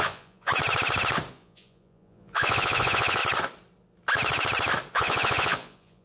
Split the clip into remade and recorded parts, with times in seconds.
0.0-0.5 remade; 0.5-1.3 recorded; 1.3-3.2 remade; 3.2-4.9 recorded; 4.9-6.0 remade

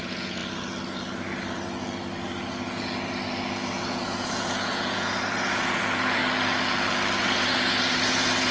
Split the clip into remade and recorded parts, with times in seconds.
0.0-0.4 remade; 0.4-3.8 recorded; 3.8-6.2 remade; 6.2-7.2 recorded; 7.2-8.5 remade

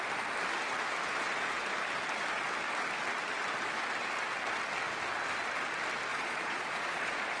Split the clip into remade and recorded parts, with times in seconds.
0.0-6.1 recorded; 6.1-7.4 remade

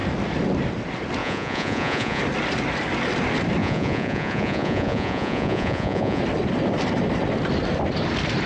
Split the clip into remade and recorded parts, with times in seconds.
0.0-1.2 recorded; 1.2-2.2 remade; 2.2-3.6 recorded; 3.6-6.2 remade; 6.2-8.5 recorded

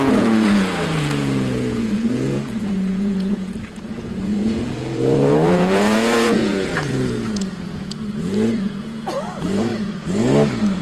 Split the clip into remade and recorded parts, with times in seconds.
0.0-9.7 remade; 9.7-10.8 recorded

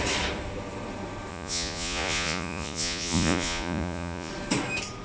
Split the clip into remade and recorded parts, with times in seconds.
0.0-1.3 recorded; 1.3-4.3 remade; 4.3-5.0 recorded

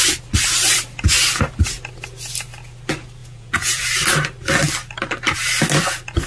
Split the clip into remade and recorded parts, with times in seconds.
0.0-3.2 recorded; 3.2-3.8 remade; 3.8-6.3 recorded

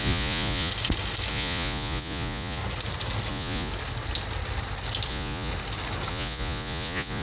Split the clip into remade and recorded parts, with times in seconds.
0.0-0.7 remade; 0.7-1.3 recorded; 1.3-2.6 remade; 2.6-3.3 recorded; 3.3-3.7 remade; 3.7-5.1 recorded; 5.1-5.5 remade; 5.5-6.1 recorded; 6.1-7.2 remade